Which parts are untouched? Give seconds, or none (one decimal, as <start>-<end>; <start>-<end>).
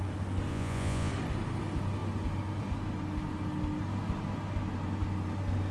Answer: 0.0-0.5; 1.1-5.7